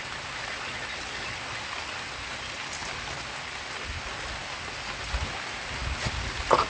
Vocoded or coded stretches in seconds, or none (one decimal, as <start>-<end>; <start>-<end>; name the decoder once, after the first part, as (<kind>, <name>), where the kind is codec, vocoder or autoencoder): none